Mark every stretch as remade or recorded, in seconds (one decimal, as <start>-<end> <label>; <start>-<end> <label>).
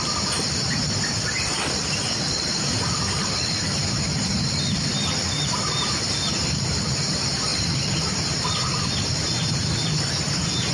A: 0.0-10.7 recorded